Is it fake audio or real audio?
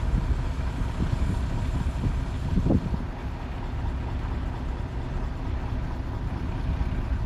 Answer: real